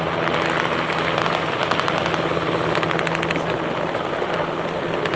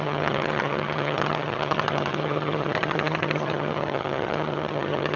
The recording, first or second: first